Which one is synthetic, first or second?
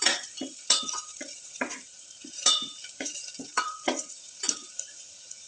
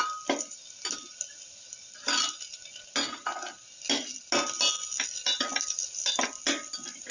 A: first